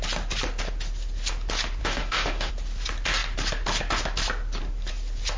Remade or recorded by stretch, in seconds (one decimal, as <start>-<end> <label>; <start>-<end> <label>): 0.0-1.8 recorded; 1.8-2.5 remade; 2.5-5.4 recorded